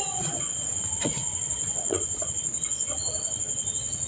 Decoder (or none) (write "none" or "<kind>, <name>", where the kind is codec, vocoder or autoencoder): vocoder, Vocos